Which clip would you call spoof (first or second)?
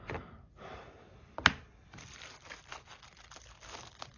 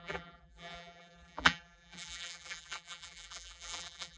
second